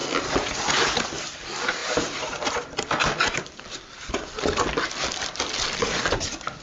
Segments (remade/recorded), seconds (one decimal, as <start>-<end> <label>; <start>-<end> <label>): 0.0-6.6 remade